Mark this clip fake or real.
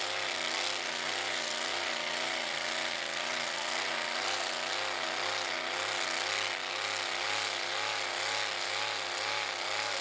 real